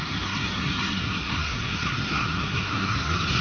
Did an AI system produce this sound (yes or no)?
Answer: yes